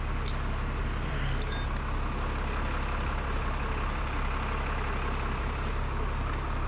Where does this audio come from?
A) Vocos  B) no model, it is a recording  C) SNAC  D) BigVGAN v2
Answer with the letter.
B